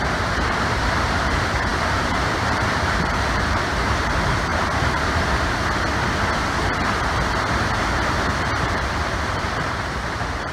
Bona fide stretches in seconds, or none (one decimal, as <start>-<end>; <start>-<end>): 4.5-8.4